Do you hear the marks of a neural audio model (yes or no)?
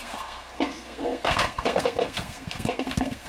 yes